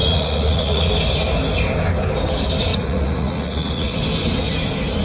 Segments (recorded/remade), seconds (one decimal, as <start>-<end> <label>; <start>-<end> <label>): 0.0-0.9 remade; 0.9-2.7 recorded; 2.7-4.0 remade; 4.0-5.0 recorded